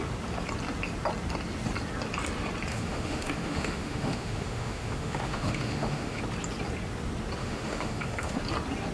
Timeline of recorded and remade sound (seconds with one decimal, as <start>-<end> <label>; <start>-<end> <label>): 0.0-2.7 recorded; 2.7-6.2 remade; 6.2-7.4 recorded; 7.4-8.4 remade; 8.4-8.9 recorded